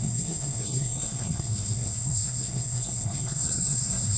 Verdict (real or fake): fake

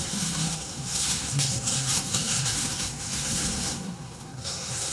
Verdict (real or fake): fake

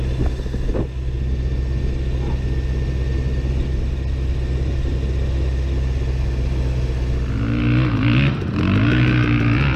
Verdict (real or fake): real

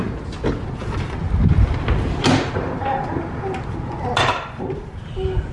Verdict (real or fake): real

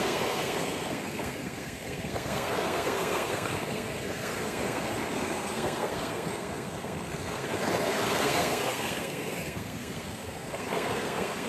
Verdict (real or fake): fake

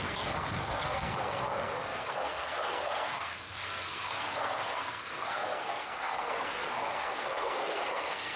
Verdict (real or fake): fake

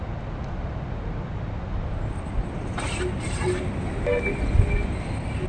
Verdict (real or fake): real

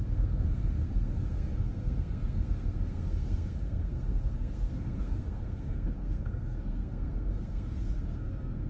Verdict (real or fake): fake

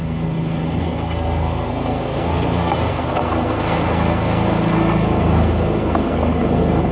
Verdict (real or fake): fake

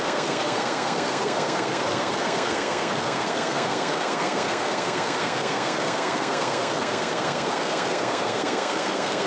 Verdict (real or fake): fake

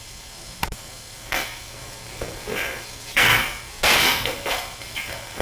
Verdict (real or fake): fake